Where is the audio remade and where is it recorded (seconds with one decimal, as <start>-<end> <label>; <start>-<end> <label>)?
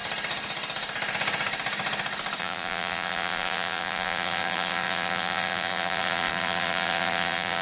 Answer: 0.0-2.4 recorded; 2.4-7.6 remade